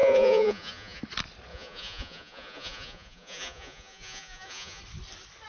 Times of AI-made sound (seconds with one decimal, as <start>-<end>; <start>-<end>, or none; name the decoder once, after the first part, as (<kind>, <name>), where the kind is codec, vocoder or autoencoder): 0.0-1.0 (vocoder, Vocos); 1.5-4.8